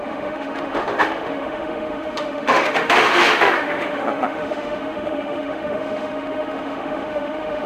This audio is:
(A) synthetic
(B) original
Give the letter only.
A